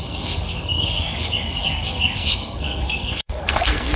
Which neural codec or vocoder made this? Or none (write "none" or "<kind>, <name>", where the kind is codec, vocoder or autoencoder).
codec, SNAC